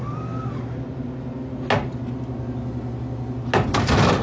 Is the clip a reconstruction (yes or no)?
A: no